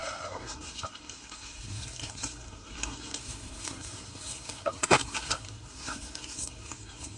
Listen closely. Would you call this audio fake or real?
fake